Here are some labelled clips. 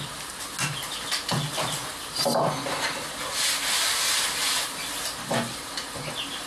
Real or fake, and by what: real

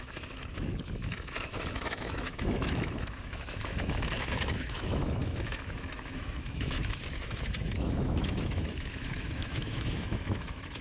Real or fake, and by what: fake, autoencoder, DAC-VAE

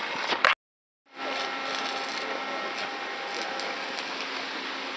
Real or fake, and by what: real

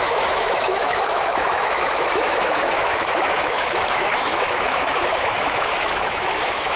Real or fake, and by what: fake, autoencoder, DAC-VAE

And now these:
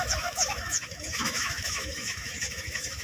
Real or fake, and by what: fake, autoencoder, DAC-VAE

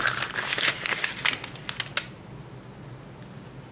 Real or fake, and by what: real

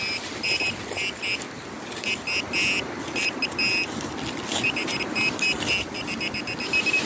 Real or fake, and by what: real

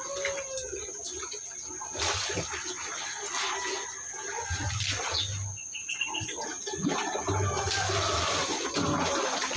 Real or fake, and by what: real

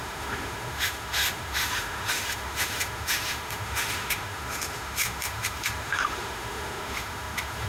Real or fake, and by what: fake, autoencoder, DAC-VAE